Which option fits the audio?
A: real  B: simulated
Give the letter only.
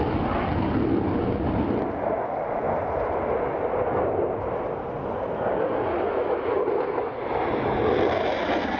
A